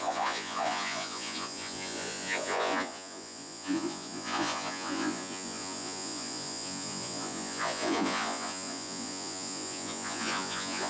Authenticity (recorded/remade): remade